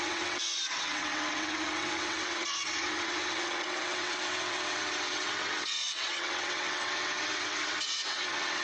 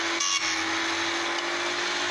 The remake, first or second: first